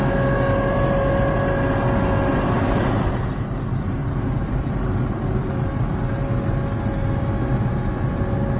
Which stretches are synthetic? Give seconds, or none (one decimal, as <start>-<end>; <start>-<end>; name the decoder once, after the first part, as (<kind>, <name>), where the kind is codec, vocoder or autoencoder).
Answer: 2.3-2.9 (vocoder, BigVGAN v2); 4.0-5.5